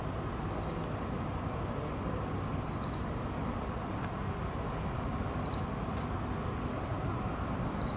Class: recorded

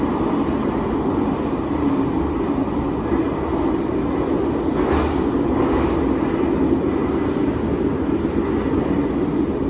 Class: recorded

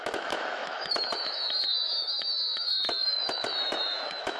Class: remade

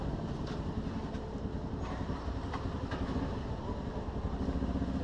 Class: remade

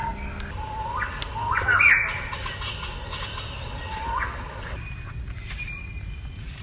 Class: recorded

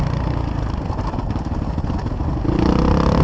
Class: recorded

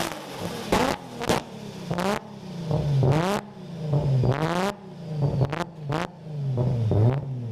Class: recorded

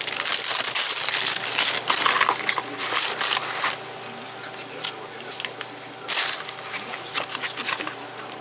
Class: recorded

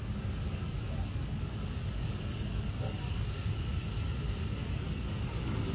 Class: remade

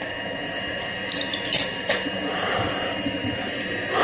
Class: recorded